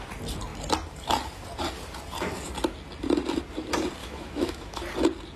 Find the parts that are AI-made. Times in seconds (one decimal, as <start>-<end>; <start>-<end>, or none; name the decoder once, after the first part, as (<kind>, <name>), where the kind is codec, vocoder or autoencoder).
4.0-4.8 (autoencoder, DAC-VAE)